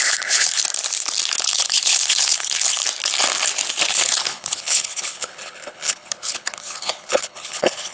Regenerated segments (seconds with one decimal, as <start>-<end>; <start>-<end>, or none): 0.0-0.6; 1.4-2.8; 3.9-7.9